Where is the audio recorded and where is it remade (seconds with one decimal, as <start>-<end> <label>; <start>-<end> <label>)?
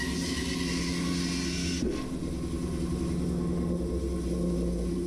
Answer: 0.0-5.1 recorded